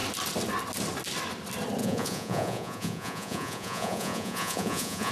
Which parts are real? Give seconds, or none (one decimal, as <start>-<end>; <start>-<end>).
0.0-1.8